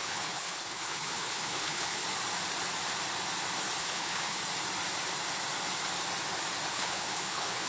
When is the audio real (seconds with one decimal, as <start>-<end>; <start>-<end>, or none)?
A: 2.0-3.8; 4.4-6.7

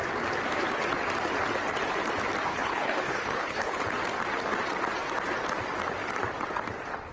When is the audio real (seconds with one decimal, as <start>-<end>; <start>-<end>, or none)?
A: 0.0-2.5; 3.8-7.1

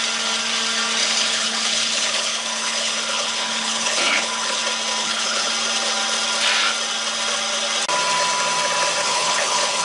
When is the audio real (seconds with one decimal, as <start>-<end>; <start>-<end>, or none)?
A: 0.0-1.0; 4.6-5.0; 5.5-9.0

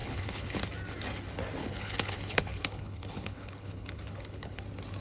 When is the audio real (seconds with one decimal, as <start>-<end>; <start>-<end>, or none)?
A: 0.6-1.6; 4.6-5.0

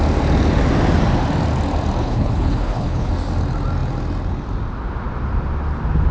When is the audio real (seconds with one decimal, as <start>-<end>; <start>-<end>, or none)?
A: 0.0-2.0; 3.1-6.1

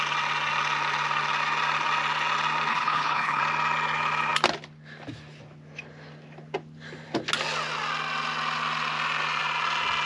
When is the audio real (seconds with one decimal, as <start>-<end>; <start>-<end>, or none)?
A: 0.0-2.7; 3.4-10.1

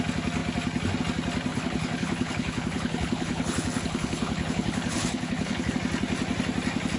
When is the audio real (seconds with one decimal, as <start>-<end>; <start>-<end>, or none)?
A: 0.0-1.5; 5.7-7.0

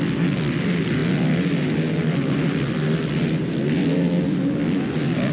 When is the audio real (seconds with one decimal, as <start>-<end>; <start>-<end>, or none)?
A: 0.0-5.3